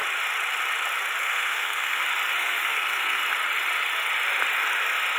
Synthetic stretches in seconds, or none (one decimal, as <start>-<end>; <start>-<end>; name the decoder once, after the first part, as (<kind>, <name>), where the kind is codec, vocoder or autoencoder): 1.2-2.0 (codec, SNAC); 2.4-3.2